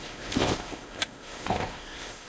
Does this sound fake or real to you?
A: fake